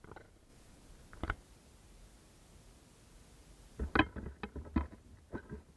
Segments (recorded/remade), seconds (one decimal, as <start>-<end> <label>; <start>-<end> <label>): 0.0-5.8 recorded